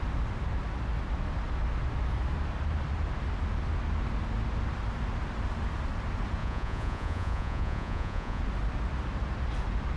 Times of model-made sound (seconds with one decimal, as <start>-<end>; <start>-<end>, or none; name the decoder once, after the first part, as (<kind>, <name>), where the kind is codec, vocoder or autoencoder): 6.4-8.4 (vocoder, Vocos)

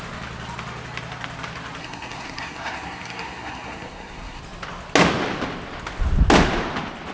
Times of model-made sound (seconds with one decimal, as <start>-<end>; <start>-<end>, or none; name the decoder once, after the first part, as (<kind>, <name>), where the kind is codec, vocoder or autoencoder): 1.8-4.4 (codec, SNAC)